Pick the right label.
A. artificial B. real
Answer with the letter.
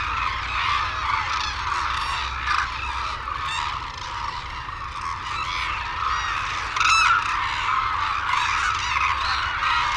B